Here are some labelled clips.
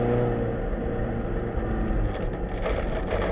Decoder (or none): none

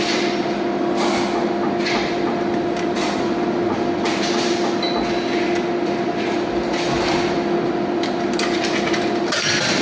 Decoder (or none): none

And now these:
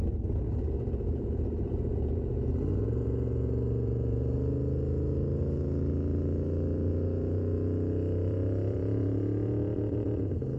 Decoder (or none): vocoder, Vocos